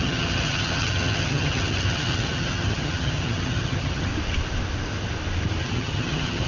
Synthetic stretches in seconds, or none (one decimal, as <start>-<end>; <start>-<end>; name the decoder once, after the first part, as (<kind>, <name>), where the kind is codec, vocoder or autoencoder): 0.0-4.1 (vocoder, HiFi-GAN); 5.6-6.5